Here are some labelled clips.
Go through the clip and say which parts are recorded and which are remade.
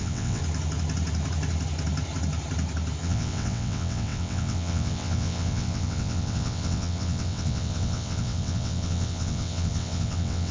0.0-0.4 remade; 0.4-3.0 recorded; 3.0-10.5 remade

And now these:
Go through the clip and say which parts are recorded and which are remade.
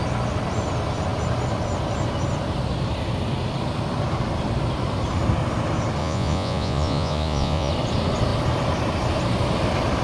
0.0-6.0 recorded; 6.0-7.7 remade; 7.7-10.0 recorded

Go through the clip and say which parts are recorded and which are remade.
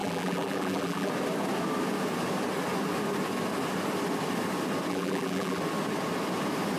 0.0-1.1 remade; 1.1-4.9 recorded; 4.9-5.6 remade; 5.6-6.8 recorded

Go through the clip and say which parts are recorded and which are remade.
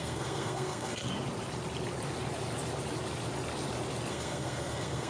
0.0-1.0 remade; 1.0-4.1 recorded; 4.1-5.1 remade